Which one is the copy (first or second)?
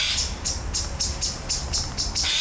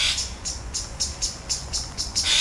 second